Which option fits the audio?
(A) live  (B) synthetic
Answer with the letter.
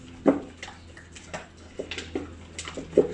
A